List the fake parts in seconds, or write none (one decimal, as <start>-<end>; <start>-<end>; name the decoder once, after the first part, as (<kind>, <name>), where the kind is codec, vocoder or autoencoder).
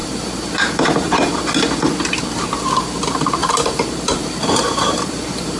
0.0-1.3 (vocoder, BigVGAN v2); 3.4-5.6